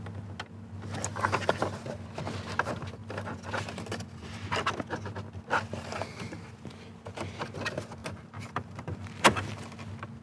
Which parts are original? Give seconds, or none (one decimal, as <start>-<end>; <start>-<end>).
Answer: 0.0-8.0; 9.5-10.2